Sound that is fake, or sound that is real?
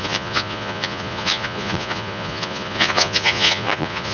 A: fake